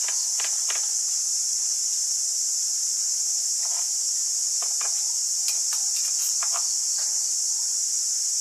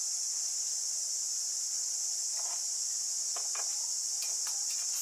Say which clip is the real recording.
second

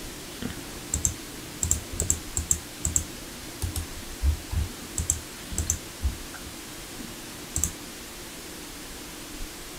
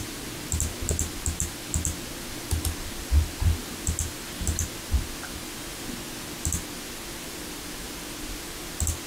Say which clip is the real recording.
second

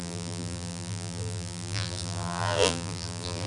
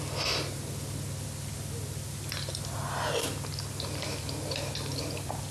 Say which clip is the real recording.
second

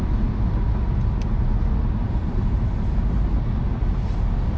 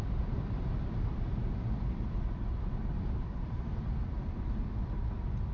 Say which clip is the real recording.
first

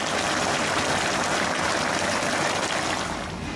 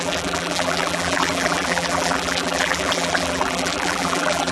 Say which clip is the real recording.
first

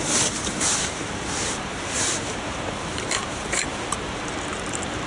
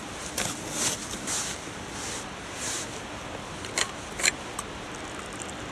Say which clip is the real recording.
second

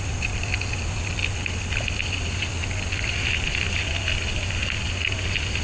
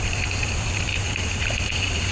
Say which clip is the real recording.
first